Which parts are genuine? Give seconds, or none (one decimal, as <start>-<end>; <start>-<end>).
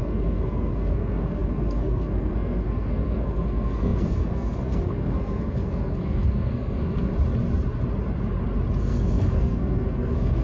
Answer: 7.1-8.8